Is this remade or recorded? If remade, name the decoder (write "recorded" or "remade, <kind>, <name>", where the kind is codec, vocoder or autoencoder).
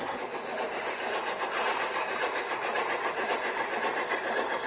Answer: remade, vocoder, BigVGAN v2